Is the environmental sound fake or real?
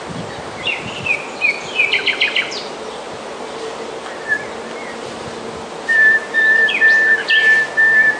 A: real